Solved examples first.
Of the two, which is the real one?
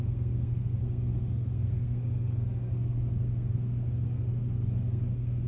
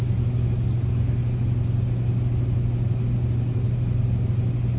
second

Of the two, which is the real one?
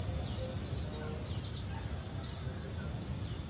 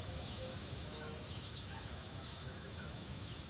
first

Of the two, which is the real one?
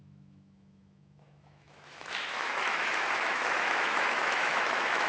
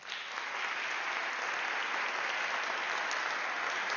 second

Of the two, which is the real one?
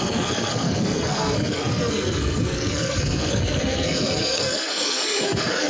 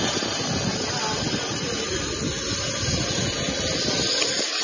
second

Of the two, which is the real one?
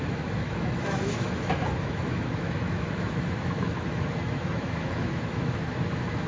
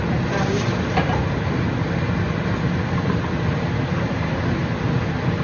second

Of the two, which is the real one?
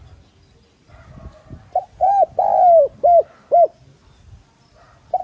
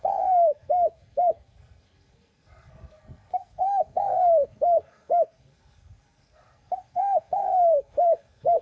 first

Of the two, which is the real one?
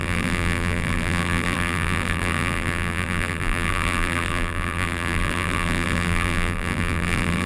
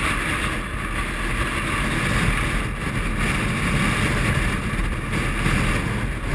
second